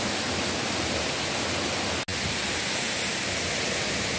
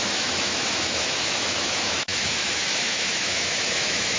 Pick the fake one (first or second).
second